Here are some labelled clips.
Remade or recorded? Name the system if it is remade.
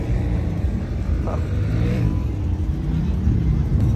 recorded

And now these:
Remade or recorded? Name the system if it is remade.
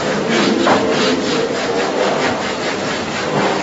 recorded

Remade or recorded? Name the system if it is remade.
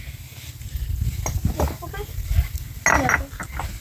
recorded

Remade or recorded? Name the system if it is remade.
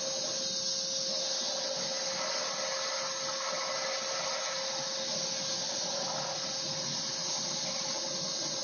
recorded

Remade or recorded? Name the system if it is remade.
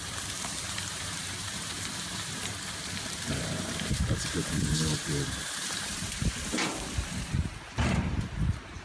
remade, vocoder, BigVGAN v2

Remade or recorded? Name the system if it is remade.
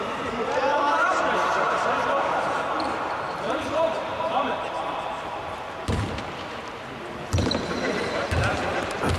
remade, vocoder, BigVGAN v2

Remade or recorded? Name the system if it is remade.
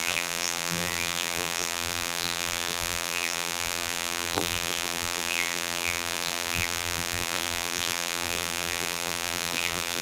remade, vocoder, BigVGAN v2